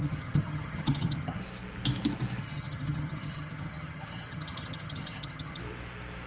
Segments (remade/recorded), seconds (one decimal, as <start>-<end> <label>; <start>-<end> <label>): 0.0-1.4 remade; 1.4-2.4 recorded; 2.4-5.6 remade; 5.6-6.3 recorded